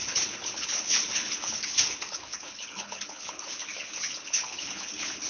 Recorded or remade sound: remade